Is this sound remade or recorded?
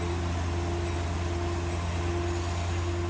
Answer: recorded